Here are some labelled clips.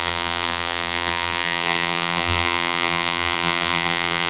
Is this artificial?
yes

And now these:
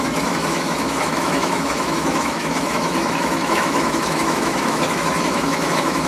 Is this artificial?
yes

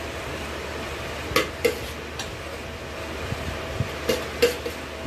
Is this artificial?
no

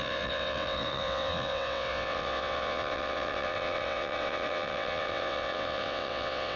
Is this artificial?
yes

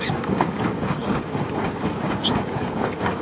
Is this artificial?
yes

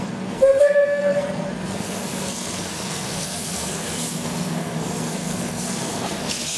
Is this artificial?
yes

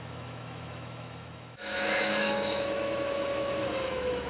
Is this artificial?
yes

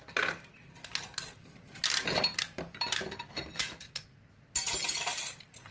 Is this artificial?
no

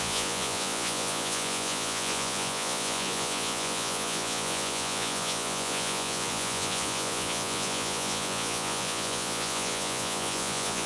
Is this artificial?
yes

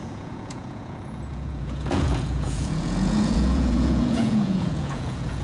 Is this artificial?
yes